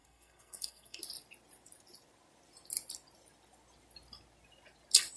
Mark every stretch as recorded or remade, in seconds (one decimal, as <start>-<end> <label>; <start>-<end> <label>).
0.0-1.0 remade; 1.0-5.2 recorded